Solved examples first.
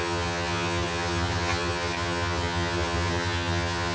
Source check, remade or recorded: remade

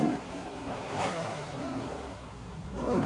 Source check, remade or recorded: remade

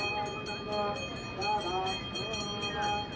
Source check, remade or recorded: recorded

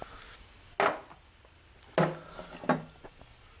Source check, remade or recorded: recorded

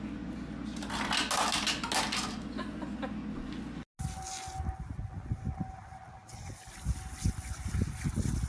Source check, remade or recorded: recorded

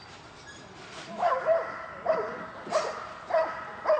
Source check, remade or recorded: recorded